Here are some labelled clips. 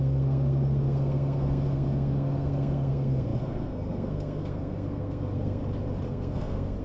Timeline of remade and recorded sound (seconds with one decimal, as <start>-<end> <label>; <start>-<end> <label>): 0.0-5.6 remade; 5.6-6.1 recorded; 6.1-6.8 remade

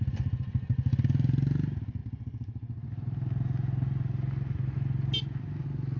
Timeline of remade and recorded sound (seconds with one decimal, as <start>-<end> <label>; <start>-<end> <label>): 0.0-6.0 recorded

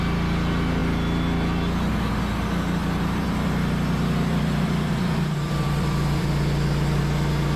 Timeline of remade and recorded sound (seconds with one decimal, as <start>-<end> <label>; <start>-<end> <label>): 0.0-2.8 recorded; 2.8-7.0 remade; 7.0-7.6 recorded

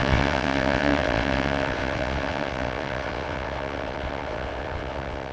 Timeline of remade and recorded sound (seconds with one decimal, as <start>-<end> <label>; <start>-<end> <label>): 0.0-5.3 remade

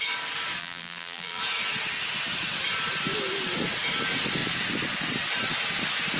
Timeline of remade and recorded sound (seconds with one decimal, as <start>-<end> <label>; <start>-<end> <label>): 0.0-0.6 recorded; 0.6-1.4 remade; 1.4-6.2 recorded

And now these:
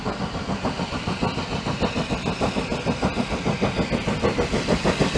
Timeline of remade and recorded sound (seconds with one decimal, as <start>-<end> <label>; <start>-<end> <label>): 0.0-5.2 recorded